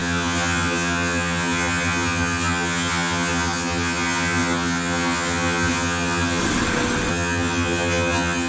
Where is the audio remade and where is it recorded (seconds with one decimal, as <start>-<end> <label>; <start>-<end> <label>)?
0.0-6.4 remade; 6.4-7.1 recorded; 7.1-8.5 remade